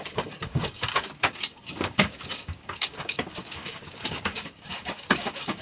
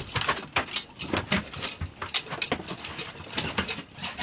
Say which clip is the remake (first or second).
first